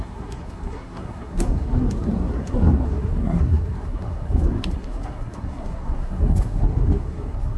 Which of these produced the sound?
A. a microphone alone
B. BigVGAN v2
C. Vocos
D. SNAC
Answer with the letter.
D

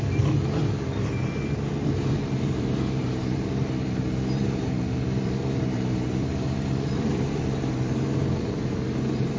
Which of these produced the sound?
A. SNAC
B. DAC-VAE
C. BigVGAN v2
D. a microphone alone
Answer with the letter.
C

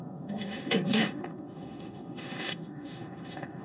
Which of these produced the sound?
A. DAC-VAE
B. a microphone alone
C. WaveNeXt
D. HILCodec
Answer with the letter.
A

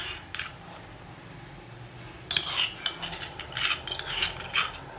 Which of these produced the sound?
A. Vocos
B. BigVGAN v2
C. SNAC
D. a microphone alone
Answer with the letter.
D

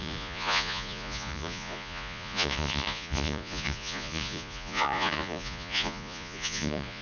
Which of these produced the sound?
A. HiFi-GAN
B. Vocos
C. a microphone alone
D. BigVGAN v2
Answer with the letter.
B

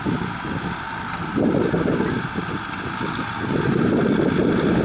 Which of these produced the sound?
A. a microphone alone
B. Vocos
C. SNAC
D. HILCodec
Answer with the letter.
A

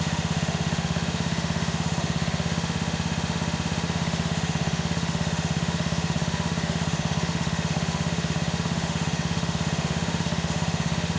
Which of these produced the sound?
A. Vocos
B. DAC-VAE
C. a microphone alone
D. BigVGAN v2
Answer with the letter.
B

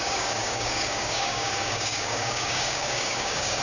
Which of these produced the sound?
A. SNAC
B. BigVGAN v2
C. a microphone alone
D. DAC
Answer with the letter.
D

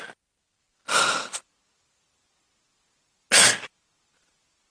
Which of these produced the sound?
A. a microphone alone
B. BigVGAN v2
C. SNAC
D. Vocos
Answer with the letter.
A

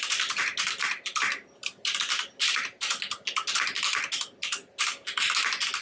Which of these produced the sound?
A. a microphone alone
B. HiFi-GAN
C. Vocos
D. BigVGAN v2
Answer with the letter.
A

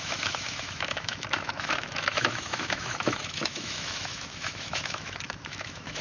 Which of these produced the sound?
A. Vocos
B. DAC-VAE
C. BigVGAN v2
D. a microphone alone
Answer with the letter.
B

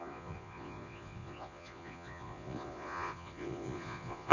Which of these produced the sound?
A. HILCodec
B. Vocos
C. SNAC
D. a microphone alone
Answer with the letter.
B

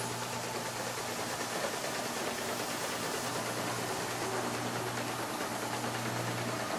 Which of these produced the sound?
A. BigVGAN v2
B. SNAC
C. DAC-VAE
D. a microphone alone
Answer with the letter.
D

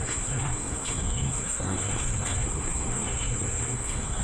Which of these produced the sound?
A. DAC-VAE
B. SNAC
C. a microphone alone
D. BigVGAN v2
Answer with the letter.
B